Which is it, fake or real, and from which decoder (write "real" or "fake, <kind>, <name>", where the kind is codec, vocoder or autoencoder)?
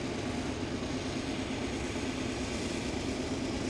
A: real